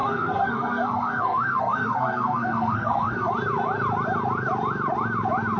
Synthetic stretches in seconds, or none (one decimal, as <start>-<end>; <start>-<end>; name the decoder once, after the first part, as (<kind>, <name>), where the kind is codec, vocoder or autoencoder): 0.0-3.3 (codec, SNAC)